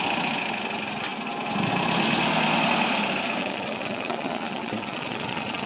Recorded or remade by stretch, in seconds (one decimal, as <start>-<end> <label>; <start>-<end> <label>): 0.0-3.4 recorded; 3.4-5.7 remade